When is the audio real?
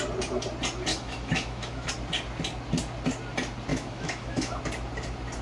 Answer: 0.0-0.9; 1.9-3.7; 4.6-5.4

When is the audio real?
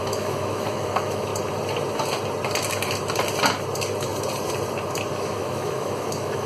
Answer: 1.3-5.2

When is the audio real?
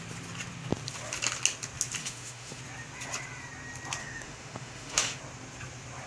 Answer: 0.0-2.0; 2.6-4.0; 5.2-6.1